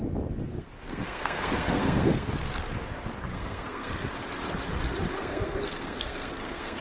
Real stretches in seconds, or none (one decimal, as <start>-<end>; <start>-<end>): 0.0-0.5; 2.3-3.3; 4.1-5.2